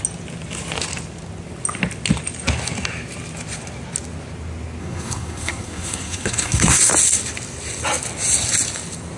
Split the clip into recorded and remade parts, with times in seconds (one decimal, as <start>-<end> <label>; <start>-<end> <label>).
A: 0.0-4.8 recorded; 4.8-6.9 remade; 6.9-9.2 recorded